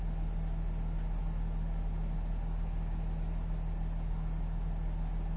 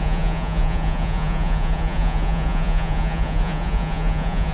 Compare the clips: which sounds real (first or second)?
first